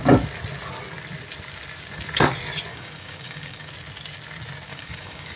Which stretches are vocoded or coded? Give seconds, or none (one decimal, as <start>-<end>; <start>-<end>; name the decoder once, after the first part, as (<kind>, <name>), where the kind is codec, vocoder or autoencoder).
2.7-3.7 (codec, DAC); 4.7-5.4